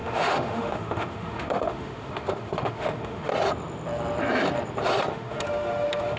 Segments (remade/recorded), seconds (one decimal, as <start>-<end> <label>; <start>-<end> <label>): 0.0-3.3 remade; 3.3-5.1 recorded; 5.1-6.2 remade